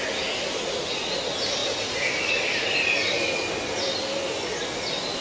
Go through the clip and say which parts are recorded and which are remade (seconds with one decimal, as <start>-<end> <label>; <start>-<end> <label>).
0.0-0.6 remade; 0.6-1.6 recorded; 1.6-4.6 remade; 4.6-5.2 recorded